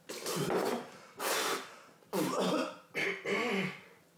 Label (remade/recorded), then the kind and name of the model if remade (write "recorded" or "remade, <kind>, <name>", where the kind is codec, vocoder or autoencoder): recorded